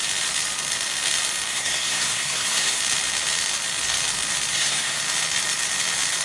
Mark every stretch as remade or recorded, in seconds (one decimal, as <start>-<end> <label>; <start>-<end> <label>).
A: 0.0-1.5 recorded; 1.5-2.8 remade; 2.8-4.5 recorded; 4.5-5.0 remade; 5.0-6.2 recorded